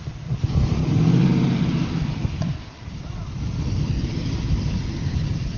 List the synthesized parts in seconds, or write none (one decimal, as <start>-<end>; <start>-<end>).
0.0-5.6